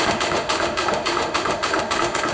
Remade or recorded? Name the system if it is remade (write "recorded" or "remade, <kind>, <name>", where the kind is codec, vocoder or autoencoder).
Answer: remade, autoencoder, DAC-VAE